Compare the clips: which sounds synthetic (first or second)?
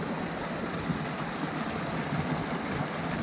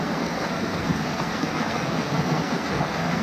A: second